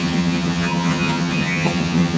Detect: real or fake fake